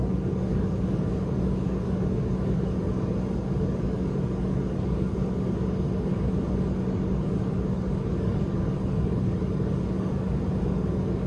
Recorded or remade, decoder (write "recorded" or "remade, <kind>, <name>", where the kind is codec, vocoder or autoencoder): remade, codec, DAC